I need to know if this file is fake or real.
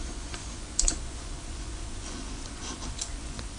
fake